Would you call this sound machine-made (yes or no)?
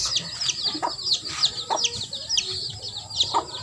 no